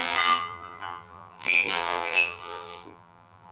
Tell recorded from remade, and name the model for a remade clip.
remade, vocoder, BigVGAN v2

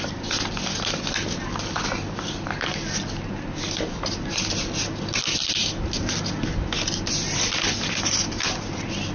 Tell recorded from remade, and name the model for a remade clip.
recorded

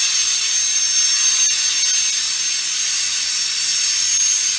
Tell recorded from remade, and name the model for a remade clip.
recorded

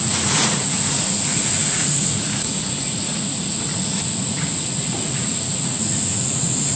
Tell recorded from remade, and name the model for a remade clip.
remade, vocoder, Vocos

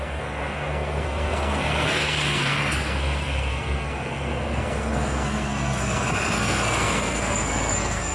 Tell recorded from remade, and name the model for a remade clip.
remade, codec, SNAC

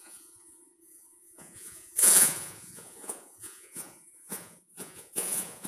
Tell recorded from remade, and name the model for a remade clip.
remade, vocoder, Vocos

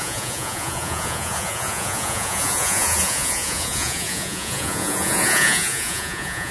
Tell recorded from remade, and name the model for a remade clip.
remade, vocoder, Vocos